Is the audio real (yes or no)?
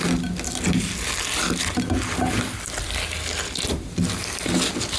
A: yes